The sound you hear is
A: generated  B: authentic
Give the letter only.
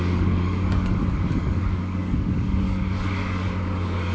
A